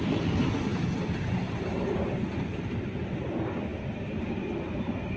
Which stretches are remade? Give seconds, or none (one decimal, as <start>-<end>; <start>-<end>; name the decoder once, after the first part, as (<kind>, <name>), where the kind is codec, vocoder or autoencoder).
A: none

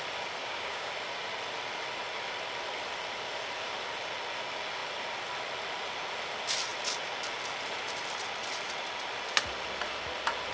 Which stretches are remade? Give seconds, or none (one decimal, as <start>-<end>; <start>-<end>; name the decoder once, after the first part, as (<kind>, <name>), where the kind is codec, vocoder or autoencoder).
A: 0.4-0.9 (codec, DAC)

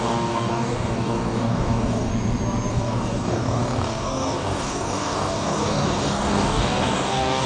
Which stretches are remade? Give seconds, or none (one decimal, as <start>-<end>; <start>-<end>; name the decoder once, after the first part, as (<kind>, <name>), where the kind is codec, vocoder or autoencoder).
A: 0.0-2.1 (codec, DAC); 2.7-7.5

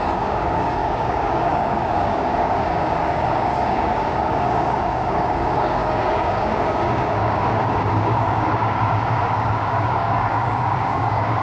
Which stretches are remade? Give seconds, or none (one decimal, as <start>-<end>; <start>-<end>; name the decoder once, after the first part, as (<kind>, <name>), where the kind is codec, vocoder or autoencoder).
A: 0.0-11.4 (codec, DAC)

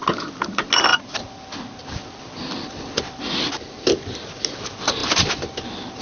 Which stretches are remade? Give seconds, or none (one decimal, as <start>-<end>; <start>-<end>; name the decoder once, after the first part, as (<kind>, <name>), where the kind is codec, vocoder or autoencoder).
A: none

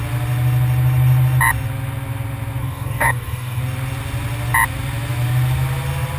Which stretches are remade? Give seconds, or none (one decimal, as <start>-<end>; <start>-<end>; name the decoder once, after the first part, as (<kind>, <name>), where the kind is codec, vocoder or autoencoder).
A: 2.6-3.6 (codec, DAC)